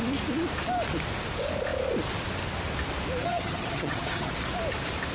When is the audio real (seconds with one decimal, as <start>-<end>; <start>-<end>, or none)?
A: 0.0-3.2; 4.3-5.1